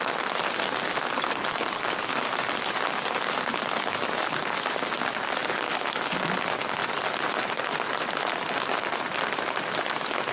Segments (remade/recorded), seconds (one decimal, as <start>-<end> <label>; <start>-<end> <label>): 0.0-10.3 recorded